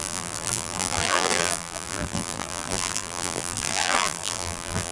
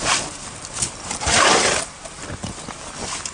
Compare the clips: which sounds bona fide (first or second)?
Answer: second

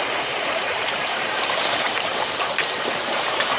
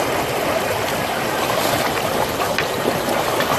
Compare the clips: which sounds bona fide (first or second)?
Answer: second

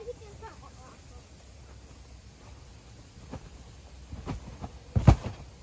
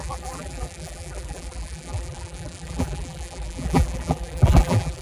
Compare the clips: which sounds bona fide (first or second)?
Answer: first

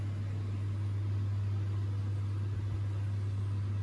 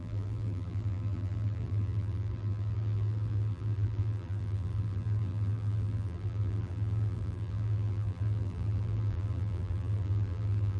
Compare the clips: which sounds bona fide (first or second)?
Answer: first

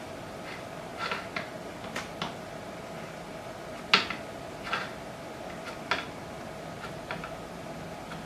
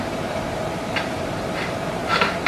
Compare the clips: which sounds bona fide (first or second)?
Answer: first